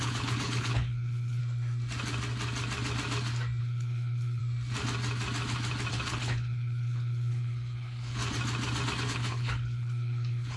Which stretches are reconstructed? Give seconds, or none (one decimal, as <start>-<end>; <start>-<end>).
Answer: 0.0-1.4; 3.6-4.4; 5.9-8.2; 9.0-10.6